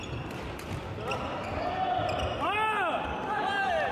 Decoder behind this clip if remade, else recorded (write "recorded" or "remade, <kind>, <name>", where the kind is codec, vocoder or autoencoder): recorded